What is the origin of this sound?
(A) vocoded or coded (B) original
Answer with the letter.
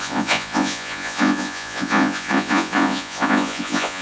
A